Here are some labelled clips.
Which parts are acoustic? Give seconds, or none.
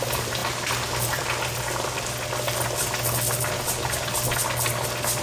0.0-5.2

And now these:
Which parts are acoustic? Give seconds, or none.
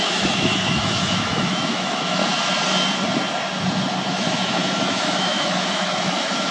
2.2-4.1